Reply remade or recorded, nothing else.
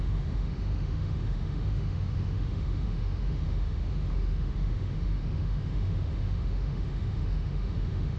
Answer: remade